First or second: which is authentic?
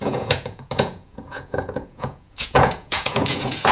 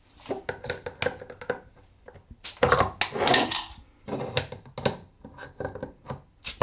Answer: second